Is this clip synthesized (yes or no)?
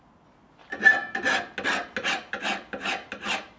no